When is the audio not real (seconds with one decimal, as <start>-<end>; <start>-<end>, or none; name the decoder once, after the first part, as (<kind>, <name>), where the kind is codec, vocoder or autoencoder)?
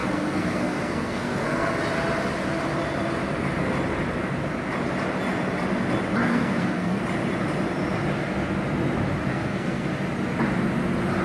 0.0-1.7 (codec, SNAC); 6.2-7.0; 9.3-9.9